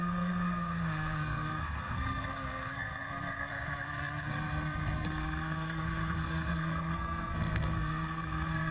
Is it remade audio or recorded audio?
remade